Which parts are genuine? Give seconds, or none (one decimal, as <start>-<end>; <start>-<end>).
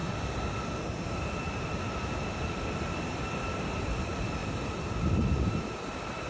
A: 0.0-6.3